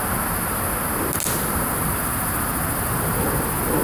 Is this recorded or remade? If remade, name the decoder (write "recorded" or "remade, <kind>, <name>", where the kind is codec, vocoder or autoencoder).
recorded